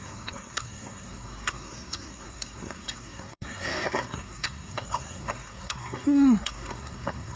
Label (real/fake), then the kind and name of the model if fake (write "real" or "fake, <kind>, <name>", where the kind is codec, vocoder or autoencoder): fake, codec, SNAC